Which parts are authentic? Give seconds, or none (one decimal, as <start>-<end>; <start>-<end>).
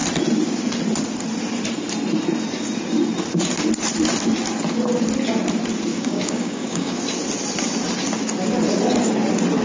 0.0-5.9; 7.0-9.6